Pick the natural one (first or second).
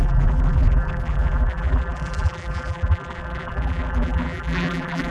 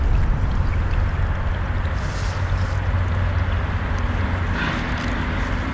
second